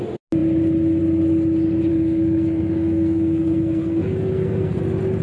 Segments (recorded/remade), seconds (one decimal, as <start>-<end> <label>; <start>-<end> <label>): 0.0-1.9 recorded; 1.9-4.8 remade; 4.8-5.2 recorded

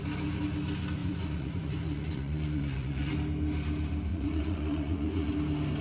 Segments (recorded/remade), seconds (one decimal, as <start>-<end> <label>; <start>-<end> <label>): 0.0-1.0 recorded; 1.0-3.1 remade; 3.1-4.1 recorded; 4.1-5.3 remade; 5.3-5.8 recorded